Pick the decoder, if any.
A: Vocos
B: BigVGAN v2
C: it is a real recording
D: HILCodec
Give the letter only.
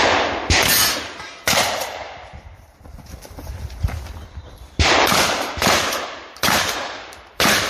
B